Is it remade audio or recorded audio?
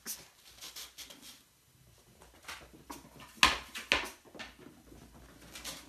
recorded